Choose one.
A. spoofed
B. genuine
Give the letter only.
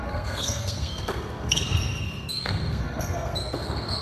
A